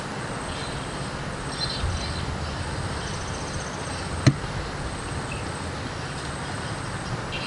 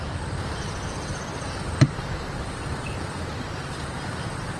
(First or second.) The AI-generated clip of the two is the second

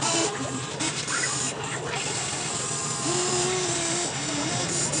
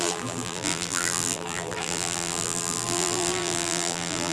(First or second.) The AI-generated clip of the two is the second